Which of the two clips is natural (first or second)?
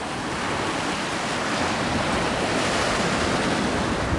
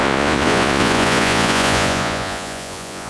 first